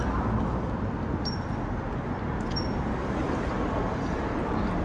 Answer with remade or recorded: recorded